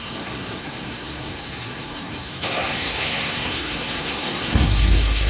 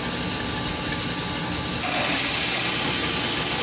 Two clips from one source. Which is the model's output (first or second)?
first